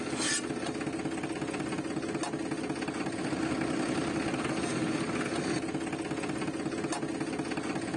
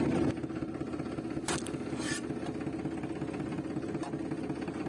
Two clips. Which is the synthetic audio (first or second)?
second